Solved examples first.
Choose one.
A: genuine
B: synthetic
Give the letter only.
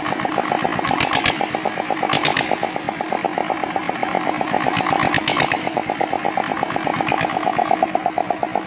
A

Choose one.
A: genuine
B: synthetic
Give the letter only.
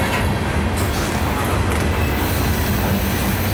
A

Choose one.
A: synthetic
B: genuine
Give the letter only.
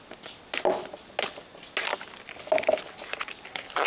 B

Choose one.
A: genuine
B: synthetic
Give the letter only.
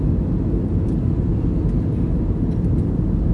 A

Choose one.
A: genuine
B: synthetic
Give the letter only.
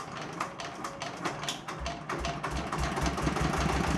A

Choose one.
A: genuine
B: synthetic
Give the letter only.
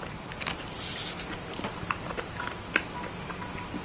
A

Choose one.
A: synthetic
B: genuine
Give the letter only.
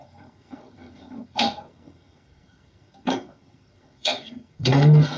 A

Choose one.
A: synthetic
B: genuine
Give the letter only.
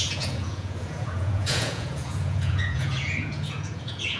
A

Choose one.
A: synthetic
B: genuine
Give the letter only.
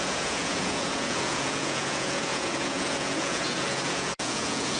A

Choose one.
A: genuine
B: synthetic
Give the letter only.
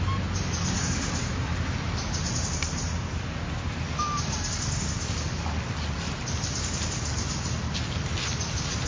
A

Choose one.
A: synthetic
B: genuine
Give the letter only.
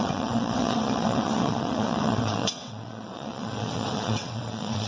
A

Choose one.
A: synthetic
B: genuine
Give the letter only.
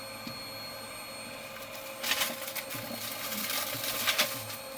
B